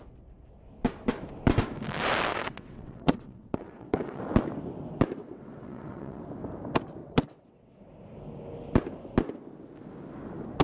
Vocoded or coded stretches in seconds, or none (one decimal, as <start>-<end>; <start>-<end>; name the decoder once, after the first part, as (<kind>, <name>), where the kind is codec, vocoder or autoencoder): 2.3-4.2 (vocoder, WaveNeXt); 5.2-6.2; 7.0-7.8

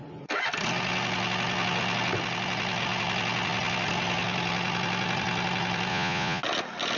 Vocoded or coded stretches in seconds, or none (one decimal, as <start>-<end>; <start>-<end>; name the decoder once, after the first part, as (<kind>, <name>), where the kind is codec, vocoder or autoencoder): 5.9-6.4 (vocoder, Vocos)

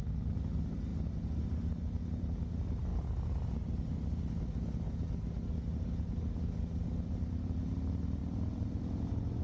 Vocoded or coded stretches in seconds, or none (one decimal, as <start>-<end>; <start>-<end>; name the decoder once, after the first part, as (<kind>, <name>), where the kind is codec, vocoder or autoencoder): none